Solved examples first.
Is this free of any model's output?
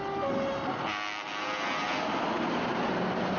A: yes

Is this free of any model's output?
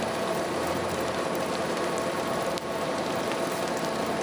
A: no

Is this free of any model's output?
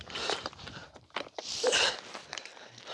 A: no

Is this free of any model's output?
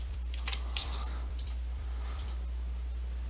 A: no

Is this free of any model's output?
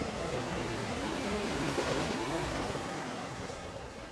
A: no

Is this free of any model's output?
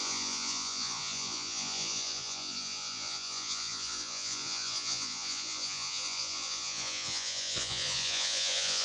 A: no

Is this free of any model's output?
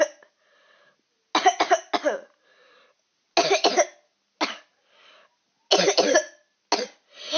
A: yes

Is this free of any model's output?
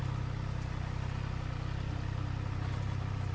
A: yes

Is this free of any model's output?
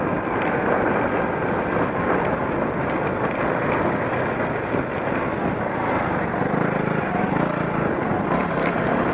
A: yes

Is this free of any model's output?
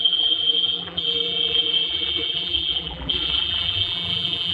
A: no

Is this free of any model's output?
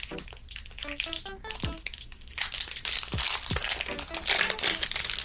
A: yes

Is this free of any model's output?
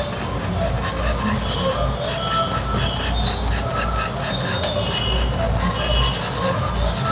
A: yes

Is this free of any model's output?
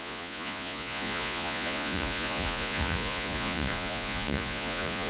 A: no